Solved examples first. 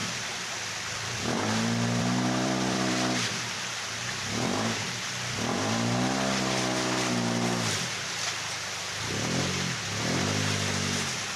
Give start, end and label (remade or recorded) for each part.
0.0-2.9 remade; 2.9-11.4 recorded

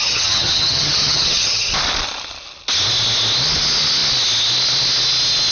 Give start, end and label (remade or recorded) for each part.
0.0-1.7 remade; 1.7-5.5 recorded